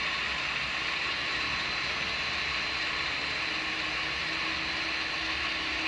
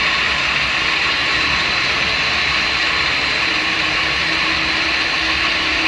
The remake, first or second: second